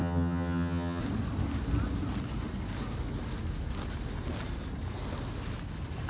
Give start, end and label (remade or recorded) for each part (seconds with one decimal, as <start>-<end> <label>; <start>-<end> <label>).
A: 0.0-1.0 remade; 1.0-6.1 recorded